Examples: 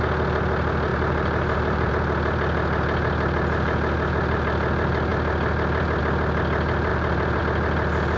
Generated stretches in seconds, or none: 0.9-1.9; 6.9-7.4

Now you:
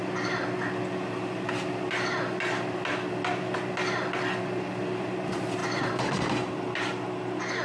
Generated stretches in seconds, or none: none

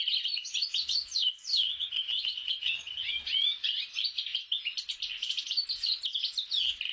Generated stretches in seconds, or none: 1.5-3.1

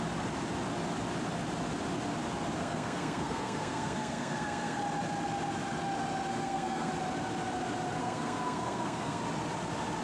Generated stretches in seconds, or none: 2.6-4.8; 6.3-6.9; 8.0-9.2

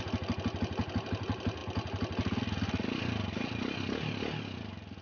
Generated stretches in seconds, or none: none

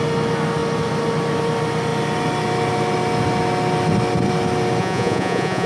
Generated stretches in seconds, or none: 4.8-5.7